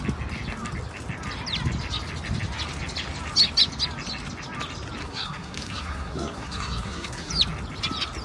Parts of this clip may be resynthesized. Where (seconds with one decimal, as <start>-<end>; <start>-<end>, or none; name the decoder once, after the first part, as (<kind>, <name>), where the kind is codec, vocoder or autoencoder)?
5.0-7.3 (codec, SNAC)